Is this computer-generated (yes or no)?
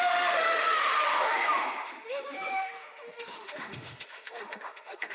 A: yes